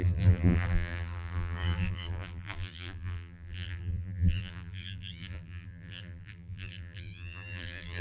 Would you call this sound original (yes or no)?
no